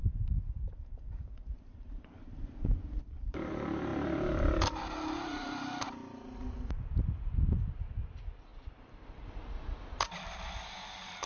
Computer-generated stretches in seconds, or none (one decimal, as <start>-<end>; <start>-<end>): 0.0-3.5; 3.9-5.8; 8.5-9.4